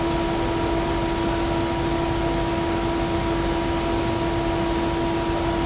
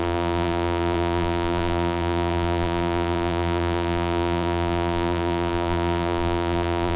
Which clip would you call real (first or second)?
first